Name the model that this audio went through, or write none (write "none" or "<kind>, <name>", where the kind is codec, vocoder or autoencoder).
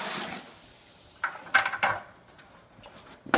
none